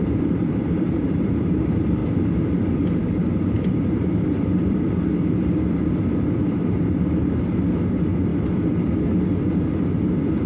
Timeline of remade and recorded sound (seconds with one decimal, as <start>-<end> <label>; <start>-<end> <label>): 0.0-2.0 remade; 2.0-3.0 recorded; 3.0-8.3 remade; 8.3-9.4 recorded; 9.4-10.5 remade